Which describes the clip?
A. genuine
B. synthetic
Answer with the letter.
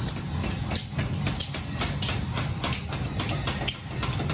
A